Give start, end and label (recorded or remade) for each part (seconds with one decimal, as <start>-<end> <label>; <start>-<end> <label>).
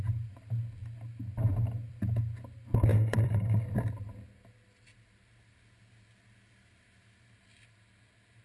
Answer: 0.0-2.9 recorded; 2.9-3.6 remade; 3.6-8.4 recorded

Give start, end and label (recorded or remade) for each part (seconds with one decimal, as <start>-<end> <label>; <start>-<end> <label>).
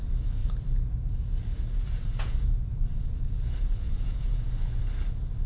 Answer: 0.0-1.5 recorded; 1.5-4.8 remade; 4.8-5.5 recorded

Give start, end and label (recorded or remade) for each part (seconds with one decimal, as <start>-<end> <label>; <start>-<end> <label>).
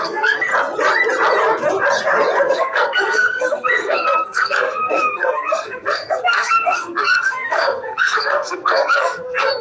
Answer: 0.0-0.5 remade; 0.5-2.4 recorded; 2.4-9.6 remade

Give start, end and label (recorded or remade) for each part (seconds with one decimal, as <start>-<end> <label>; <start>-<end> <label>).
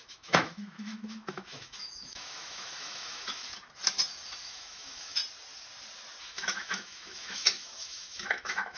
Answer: 0.0-3.5 remade; 3.5-4.4 recorded; 4.4-5.2 remade; 5.2-6.2 recorded; 6.2-8.8 remade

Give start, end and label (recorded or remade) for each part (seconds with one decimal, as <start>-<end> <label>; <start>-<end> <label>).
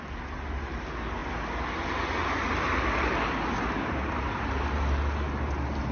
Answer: 0.0-5.9 recorded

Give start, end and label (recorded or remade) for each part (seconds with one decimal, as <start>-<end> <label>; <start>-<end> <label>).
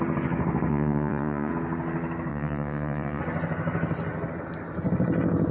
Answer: 0.0-0.7 recorded; 0.7-1.5 remade; 1.5-2.3 recorded; 2.3-3.2 remade; 3.2-5.5 recorded